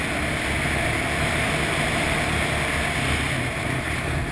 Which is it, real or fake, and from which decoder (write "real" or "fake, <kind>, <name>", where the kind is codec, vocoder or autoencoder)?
real